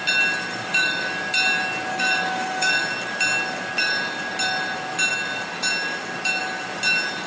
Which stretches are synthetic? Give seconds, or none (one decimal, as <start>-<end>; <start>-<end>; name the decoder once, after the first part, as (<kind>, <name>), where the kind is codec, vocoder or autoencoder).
0.5-1.1 (codec, DAC); 1.9-2.8